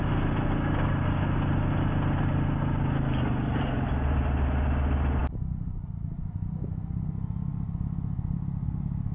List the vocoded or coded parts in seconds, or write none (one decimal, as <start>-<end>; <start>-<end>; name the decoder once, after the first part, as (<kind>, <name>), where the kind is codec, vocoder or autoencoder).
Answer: none

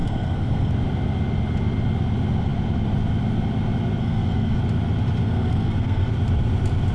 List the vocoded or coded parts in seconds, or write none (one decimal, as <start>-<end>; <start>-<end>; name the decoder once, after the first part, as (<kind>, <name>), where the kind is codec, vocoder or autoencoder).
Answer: 0.0-0.7 (codec, SNAC); 4.0-4.6; 5.2-6.1

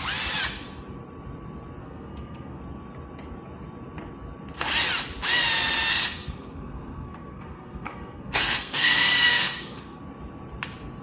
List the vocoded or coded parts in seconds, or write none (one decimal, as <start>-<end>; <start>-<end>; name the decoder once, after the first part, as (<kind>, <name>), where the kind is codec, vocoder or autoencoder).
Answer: 1.8-2.6 (codec, SNAC); 5.9-10.0

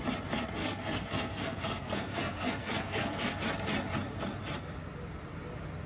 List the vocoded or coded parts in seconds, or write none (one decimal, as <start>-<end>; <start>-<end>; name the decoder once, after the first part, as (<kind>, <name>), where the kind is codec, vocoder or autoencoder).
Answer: 0.6-3.4 (codec, SNAC)

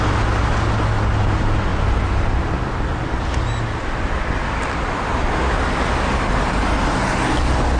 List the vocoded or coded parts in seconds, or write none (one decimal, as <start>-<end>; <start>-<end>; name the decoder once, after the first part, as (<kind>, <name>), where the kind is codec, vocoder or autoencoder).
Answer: none

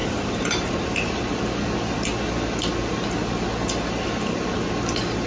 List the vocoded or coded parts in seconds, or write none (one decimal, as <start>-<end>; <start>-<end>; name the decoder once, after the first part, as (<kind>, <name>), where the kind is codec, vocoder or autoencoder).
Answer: 0.0-1.5 (vocoder, BigVGAN v2)

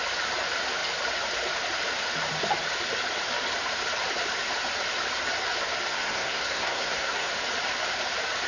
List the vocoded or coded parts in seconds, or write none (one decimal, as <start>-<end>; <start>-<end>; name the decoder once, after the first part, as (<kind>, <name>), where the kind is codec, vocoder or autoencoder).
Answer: 5.9-7.3 (codec, SNAC)